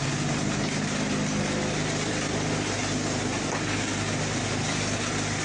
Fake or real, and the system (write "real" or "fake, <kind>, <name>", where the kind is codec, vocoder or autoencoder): real